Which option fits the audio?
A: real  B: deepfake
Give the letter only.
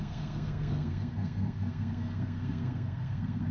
B